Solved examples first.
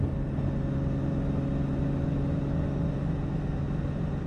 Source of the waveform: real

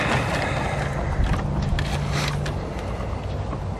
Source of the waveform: real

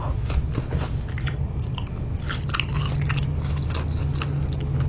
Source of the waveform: real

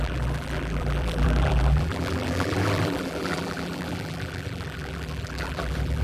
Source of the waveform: fake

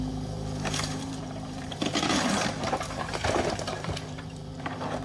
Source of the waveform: fake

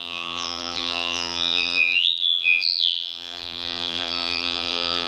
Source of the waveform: fake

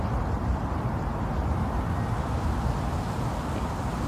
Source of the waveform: real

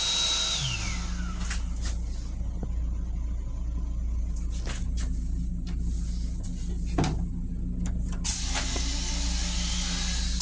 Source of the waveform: real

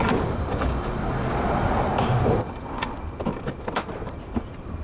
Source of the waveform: real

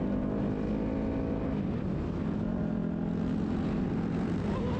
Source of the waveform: real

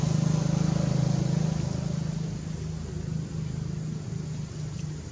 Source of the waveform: real